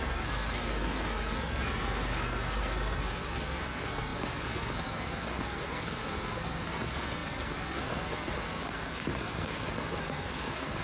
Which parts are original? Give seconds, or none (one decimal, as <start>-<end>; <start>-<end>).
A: none